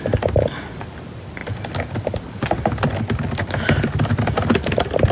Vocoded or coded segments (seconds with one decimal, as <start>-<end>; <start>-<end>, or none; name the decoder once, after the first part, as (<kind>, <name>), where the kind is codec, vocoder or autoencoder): none